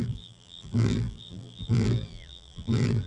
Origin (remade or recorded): remade